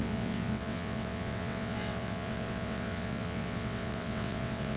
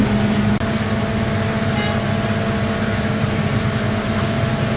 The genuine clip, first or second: second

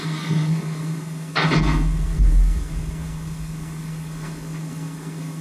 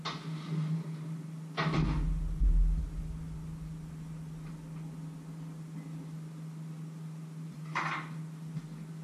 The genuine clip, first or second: second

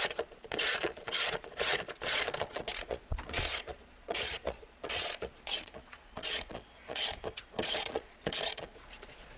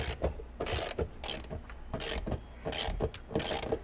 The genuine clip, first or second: second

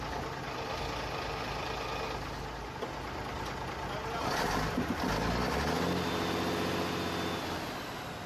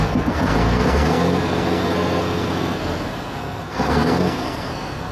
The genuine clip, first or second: first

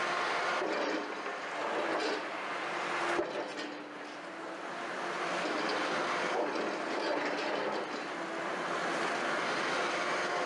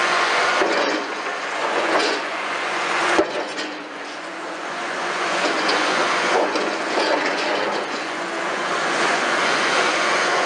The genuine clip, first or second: first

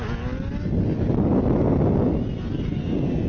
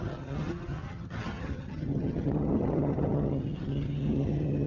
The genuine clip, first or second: first